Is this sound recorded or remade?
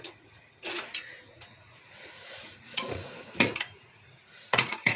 remade